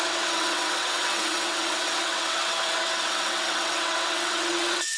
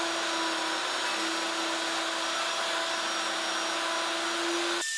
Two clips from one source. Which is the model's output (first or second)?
first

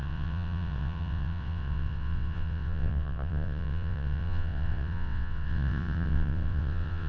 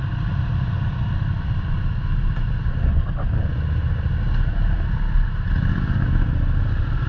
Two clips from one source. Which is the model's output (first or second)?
first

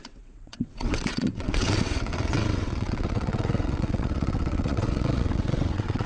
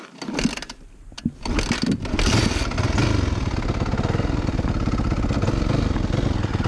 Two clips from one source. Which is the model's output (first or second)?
first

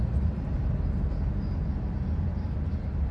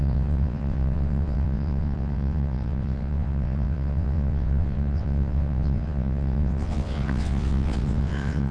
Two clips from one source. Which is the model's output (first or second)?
second